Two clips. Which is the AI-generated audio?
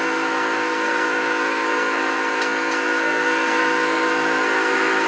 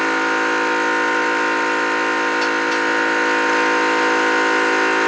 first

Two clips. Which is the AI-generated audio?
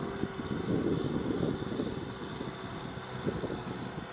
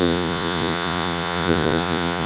second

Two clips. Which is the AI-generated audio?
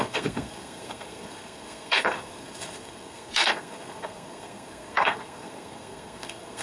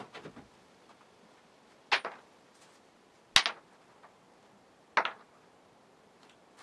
first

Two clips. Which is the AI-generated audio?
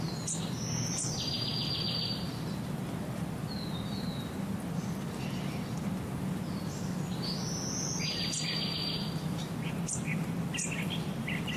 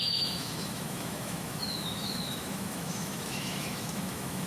second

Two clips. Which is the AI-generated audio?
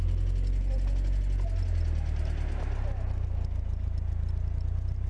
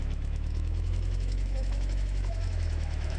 second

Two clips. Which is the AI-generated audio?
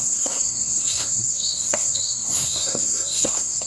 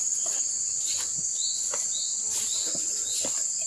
first